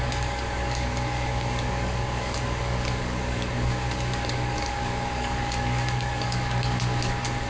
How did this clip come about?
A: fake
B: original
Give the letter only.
A